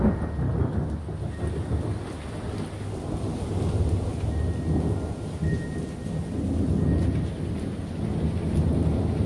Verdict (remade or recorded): recorded